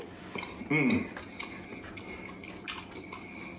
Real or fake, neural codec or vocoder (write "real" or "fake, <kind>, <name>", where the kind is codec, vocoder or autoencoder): real